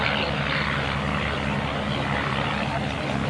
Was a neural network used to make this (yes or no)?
no